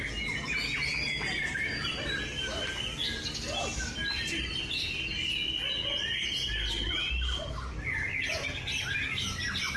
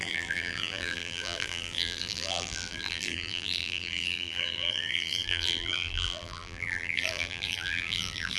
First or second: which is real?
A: first